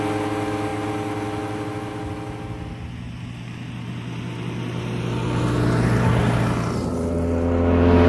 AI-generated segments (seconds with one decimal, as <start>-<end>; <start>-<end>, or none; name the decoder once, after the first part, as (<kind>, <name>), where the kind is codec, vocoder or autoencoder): none